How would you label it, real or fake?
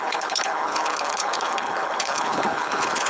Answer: fake